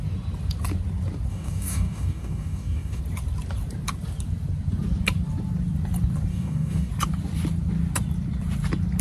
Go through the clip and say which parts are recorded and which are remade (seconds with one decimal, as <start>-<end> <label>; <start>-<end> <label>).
0.0-1.3 recorded; 1.3-3.0 remade; 3.0-6.3 recorded; 6.3-6.9 remade; 6.9-9.0 recorded

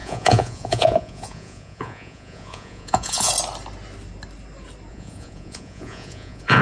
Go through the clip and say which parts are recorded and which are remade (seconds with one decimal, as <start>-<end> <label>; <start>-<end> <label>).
0.0-3.3 remade; 3.3-4.9 recorded; 4.9-6.6 remade

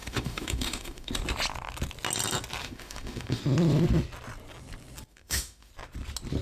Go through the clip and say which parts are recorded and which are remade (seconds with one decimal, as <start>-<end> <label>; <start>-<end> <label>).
0.0-1.1 remade; 1.1-2.6 recorded; 2.6-3.4 remade; 3.4-5.1 recorded; 5.1-5.7 remade; 5.7-6.4 recorded

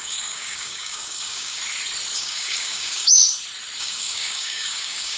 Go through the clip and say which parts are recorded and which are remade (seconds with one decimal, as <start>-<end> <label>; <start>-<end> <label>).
0.0-1.6 remade; 1.6-2.2 recorded; 2.2-3.2 remade; 3.2-3.8 recorded; 3.8-5.2 remade